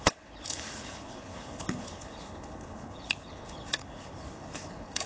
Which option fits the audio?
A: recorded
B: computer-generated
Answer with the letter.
B